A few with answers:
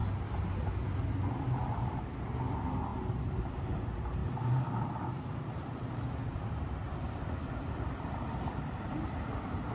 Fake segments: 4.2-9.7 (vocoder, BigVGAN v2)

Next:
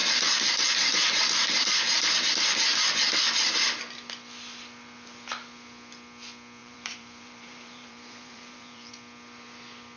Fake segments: 0.0-2.3 (vocoder, BigVGAN v2); 6.6-8.9

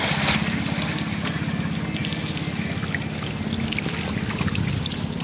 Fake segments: none

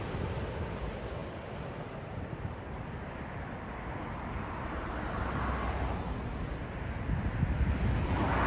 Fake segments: 1.2-4.9 (vocoder, BigVGAN v2)

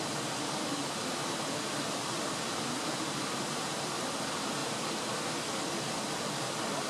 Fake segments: 4.6-5.1 (vocoder, BigVGAN v2)